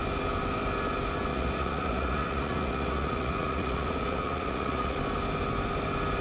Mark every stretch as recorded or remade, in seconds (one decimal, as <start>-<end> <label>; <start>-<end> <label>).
0.0-1.3 recorded; 1.3-5.0 remade; 5.0-6.2 recorded